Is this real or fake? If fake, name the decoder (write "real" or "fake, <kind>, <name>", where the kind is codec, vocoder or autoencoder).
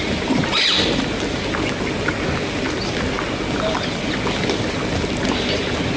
real